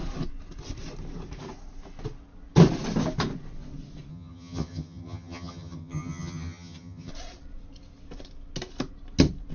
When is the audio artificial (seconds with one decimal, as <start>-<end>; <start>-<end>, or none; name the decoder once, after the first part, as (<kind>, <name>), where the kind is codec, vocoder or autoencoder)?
4.1-7.1 (vocoder, HiFi-GAN)